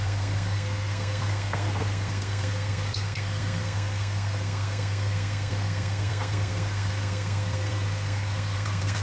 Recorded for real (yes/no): no